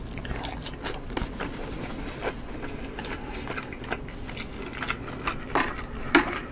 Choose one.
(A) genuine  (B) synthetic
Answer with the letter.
A